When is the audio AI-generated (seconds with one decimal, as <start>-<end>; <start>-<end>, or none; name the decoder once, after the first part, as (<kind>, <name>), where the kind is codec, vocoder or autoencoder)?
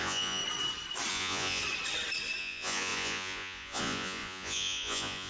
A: 0.0-0.4 (vocoder, Vocos); 1.1-1.6; 2.4-5.3